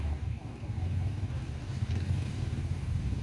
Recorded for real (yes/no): no